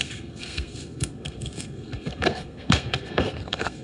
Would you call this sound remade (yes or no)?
yes